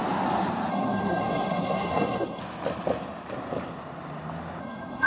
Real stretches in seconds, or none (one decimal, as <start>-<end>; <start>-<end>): 0.0-0.7; 2.4-4.6